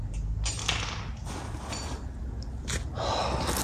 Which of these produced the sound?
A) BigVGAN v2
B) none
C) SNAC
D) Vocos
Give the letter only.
B